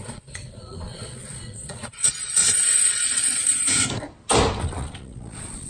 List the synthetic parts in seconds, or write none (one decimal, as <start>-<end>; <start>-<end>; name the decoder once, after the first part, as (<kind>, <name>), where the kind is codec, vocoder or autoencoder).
0.0-2.4 (vocoder, Vocos); 2.9-3.4; 4.6-5.7